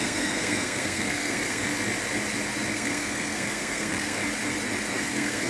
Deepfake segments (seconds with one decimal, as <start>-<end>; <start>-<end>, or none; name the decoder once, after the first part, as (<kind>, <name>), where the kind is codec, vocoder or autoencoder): 0.0-1.6 (codec, SNAC); 2.7-4.2; 4.9-5.5